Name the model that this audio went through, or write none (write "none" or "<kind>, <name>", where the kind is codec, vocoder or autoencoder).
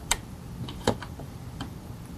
vocoder, BigVGAN v2